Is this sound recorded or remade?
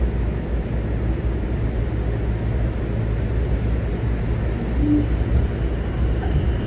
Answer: recorded